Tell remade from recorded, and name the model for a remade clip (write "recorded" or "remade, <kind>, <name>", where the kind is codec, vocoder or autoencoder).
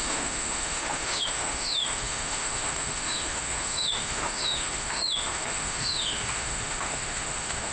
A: remade, autoencoder, DAC-VAE